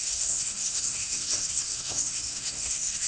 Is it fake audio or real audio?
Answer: fake